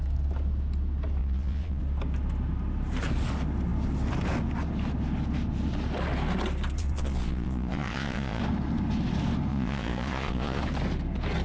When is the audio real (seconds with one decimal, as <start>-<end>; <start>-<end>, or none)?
0.0-1.2; 1.8-6.8; 8.4-9.5; 10.6-11.4